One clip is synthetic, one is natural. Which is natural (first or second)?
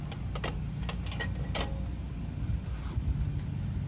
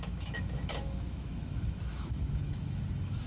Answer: first